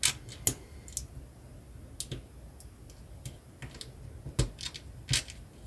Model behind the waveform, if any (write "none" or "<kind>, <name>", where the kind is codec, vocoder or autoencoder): none